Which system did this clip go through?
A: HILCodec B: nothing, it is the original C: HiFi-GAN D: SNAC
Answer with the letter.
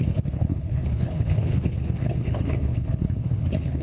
A